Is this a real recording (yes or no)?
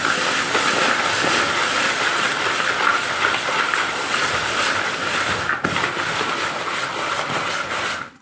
yes